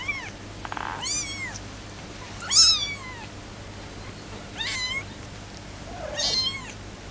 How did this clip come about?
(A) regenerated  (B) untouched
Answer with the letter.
B